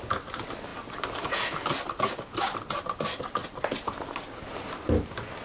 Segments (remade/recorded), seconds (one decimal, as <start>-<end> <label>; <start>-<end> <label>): 0.0-3.4 recorded; 3.4-5.4 remade